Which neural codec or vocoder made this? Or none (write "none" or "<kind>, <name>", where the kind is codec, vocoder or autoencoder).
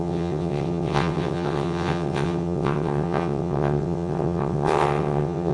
vocoder, WaveNeXt